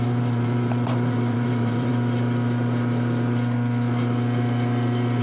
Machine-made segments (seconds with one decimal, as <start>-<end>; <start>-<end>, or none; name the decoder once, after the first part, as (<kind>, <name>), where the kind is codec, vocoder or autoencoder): 0.0-1.9 (vocoder, BigVGAN v2)